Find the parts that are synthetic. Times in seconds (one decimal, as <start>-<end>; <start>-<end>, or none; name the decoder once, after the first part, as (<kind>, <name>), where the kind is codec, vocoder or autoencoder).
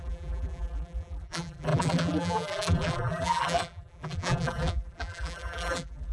0.0-6.1 (vocoder, BigVGAN v2)